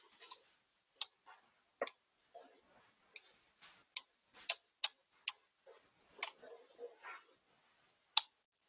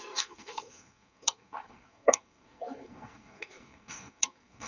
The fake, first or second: second